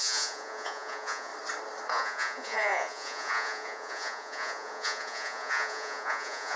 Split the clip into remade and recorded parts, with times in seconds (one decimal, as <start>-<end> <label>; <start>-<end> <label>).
0.0-1.3 remade; 1.3-1.9 recorded; 1.9-6.6 remade